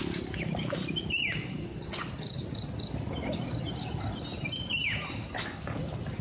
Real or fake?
real